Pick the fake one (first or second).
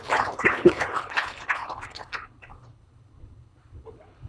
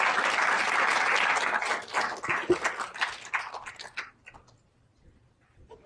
first